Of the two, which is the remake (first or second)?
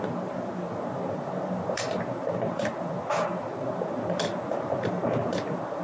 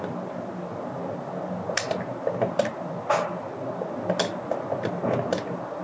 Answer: first